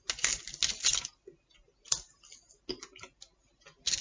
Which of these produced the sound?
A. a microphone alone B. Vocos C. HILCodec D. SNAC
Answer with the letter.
A